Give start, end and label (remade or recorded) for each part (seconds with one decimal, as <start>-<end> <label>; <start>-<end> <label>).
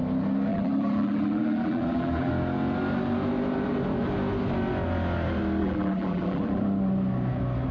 0.0-0.5 recorded; 0.5-2.3 remade; 2.3-5.6 recorded; 5.6-6.6 remade; 6.6-7.7 recorded